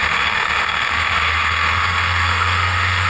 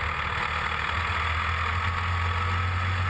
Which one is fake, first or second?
first